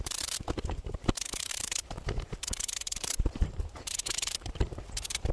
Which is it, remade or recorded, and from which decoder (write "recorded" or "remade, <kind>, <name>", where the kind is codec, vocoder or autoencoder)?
remade, vocoder, BigVGAN v2